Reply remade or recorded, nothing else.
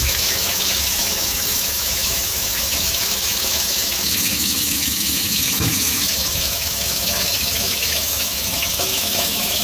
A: remade